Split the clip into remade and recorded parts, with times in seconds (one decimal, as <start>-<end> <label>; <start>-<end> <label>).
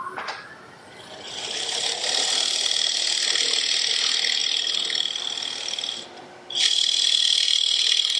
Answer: 0.0-8.2 recorded